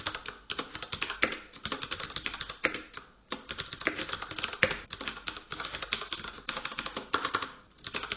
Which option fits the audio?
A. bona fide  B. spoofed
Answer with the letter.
A